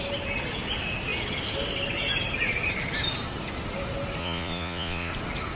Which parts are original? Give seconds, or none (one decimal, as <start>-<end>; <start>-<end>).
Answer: 0.0-4.2; 5.1-5.6